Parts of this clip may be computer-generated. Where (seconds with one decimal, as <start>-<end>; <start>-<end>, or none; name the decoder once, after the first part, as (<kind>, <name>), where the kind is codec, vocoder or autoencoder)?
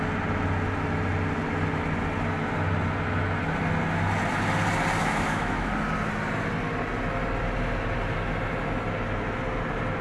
5.0-5.7 (autoencoder, DAC-VAE)